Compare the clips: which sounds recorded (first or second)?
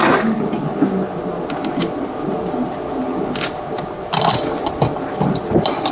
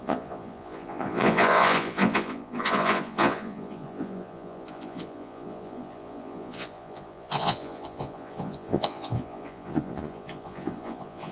first